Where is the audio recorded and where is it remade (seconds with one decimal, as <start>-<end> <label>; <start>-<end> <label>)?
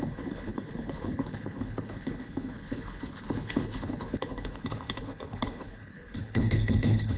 0.0-7.2 remade